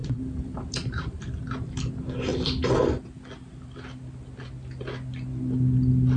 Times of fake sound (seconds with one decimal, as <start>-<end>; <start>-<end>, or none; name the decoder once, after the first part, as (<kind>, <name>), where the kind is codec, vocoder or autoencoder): 0.0-1.2 (vocoder, BigVGAN v2)

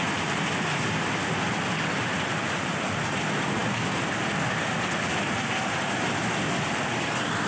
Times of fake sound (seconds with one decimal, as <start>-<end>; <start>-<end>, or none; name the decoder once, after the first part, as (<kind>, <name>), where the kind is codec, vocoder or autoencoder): none

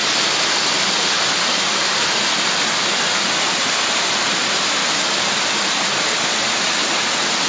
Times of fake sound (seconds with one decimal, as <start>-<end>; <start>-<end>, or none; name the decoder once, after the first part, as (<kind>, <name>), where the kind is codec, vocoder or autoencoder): none

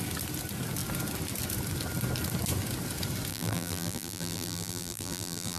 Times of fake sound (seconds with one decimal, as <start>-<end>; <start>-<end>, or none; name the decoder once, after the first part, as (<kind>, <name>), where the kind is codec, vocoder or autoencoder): 3.3-5.6 (vocoder, BigVGAN v2)

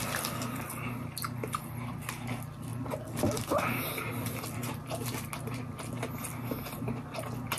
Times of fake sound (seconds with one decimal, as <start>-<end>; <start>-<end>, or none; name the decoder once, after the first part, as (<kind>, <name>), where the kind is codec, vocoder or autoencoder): none

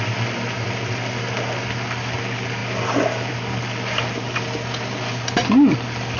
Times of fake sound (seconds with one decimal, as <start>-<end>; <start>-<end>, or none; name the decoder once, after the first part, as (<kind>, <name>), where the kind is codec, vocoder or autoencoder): none

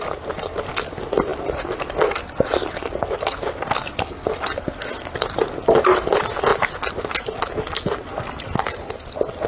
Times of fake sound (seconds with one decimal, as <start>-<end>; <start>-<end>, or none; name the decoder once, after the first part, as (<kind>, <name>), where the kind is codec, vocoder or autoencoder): 0.0-6.5 (vocoder, BigVGAN v2)

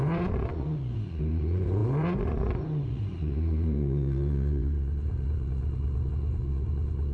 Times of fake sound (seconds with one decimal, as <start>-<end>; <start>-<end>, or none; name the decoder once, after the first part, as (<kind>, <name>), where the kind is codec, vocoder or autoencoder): 0.0-7.1 (vocoder, Vocos)